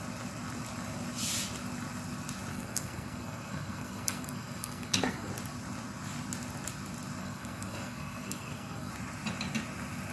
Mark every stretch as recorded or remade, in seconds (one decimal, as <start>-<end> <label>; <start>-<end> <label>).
0.0-2.5 recorded; 2.5-5.3 remade; 5.3-7.2 recorded; 7.2-8.9 remade; 8.9-10.1 recorded